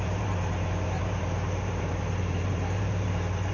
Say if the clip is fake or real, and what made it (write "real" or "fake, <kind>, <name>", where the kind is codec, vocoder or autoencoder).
fake, vocoder, BigVGAN v2